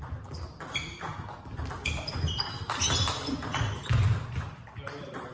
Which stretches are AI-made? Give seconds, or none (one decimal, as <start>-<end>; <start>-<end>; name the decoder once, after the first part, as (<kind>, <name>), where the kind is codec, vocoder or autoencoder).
none